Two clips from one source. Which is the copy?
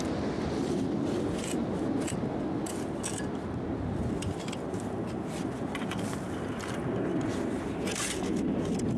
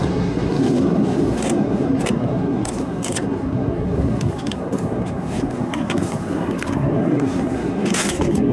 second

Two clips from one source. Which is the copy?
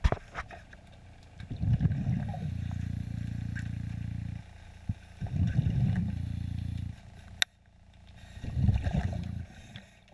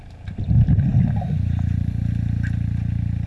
second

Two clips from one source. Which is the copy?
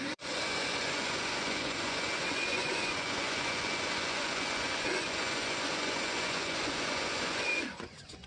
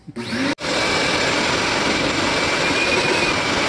first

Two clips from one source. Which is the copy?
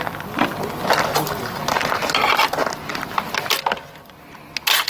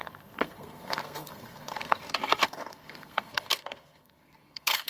second